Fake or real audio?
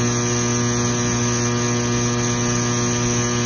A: real